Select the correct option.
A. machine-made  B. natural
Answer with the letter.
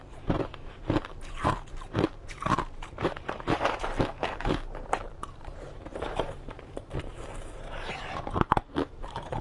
A